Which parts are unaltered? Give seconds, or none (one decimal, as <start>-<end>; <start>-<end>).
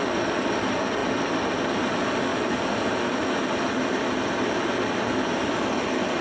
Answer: 0.0-6.2